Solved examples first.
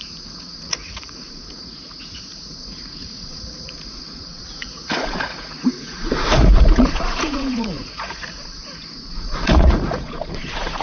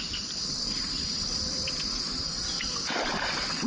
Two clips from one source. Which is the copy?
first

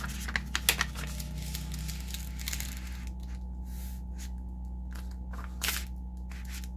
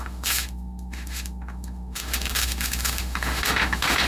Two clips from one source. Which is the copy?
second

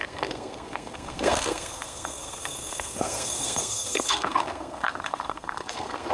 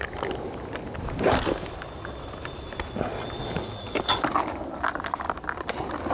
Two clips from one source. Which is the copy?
first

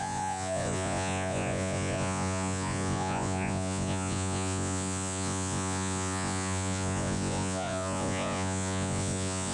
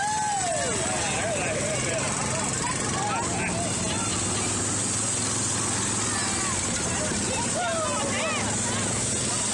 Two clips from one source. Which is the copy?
first